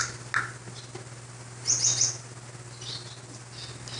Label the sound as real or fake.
real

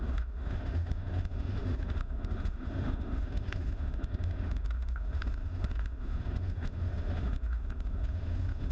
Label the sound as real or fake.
fake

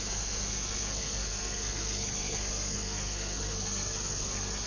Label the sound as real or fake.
fake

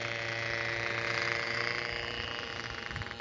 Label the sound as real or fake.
real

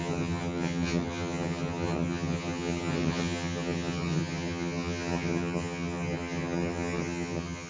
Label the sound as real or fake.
fake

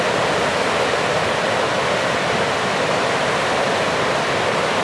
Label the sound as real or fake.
real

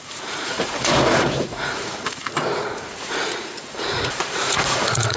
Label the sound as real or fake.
fake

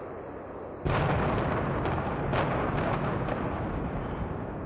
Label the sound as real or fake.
real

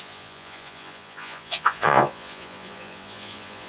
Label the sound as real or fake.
fake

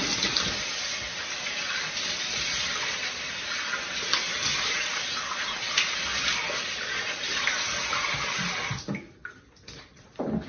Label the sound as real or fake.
real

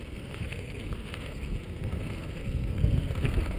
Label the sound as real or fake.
fake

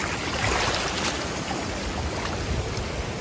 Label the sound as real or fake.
real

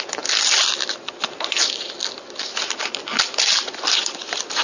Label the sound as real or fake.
real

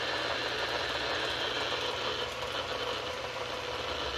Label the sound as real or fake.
real